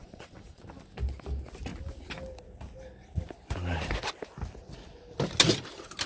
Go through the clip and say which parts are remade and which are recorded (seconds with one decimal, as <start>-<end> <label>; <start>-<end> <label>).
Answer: 0.0-0.6 remade; 0.6-6.1 recorded